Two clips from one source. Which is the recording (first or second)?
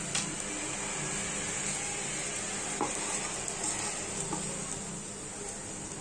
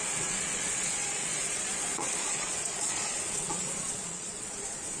first